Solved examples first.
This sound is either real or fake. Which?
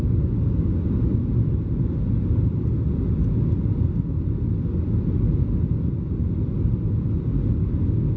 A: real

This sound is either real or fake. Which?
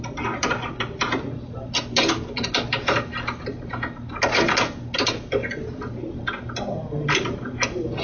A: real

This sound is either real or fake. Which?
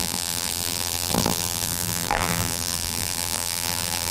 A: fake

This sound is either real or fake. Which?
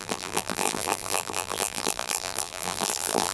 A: fake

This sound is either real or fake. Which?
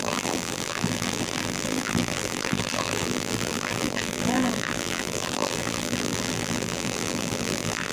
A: fake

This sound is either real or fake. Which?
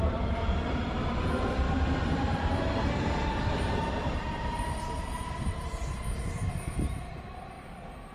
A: fake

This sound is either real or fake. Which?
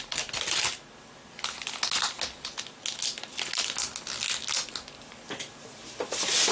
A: real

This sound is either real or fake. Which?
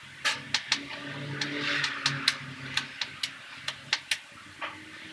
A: real